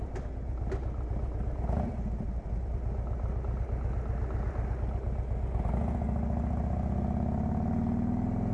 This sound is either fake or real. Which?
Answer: real